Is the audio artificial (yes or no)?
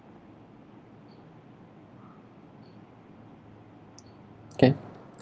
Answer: no